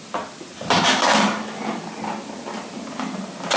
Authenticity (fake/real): real